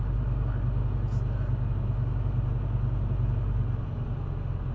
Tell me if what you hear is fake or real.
real